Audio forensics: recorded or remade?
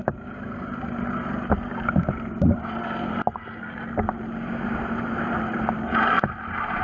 remade